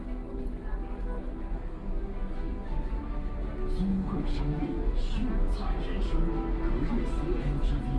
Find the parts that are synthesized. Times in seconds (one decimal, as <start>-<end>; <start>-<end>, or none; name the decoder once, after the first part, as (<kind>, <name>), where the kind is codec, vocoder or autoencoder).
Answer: 3.9-4.4 (codec, HILCodec)

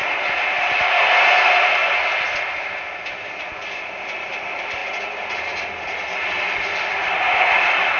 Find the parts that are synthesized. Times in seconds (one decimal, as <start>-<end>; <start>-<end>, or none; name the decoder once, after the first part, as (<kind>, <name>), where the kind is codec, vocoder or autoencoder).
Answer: 0.0-1.8 (vocoder, BigVGAN v2); 3.4-4.8

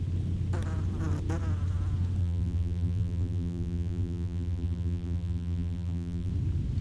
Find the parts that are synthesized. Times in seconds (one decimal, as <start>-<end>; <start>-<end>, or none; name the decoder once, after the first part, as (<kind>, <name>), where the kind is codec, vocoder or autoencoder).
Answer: 2.2-6.3 (vocoder, BigVGAN v2)